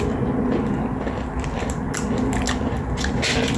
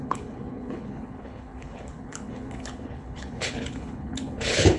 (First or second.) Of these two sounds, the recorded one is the first